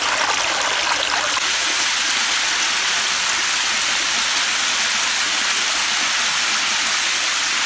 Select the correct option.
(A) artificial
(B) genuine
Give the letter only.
B